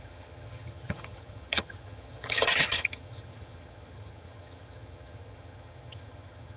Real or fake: fake